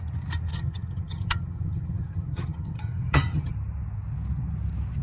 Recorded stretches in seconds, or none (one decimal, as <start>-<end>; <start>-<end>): 0.0-0.5; 3.5-5.0